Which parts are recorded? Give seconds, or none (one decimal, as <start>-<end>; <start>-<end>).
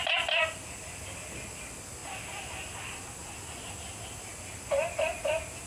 0.0-2.0; 3.7-5.7